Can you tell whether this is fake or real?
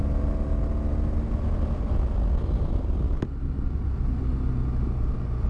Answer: real